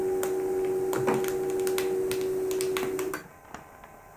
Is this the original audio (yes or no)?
yes